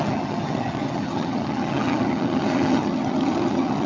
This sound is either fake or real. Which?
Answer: fake